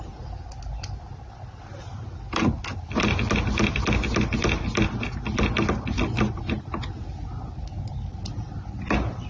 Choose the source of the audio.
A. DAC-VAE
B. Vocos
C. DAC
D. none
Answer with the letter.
D